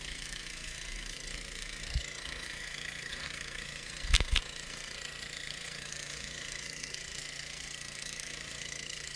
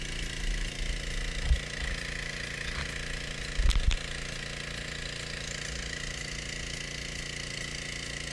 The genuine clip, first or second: second